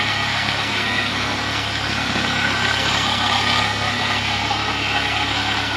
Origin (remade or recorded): remade